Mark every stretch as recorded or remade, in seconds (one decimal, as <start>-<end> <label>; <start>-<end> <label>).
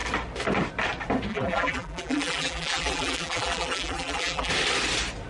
0.0-1.3 recorded; 1.3-4.5 remade; 4.5-5.3 recorded